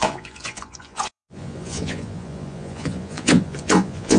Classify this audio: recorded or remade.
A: remade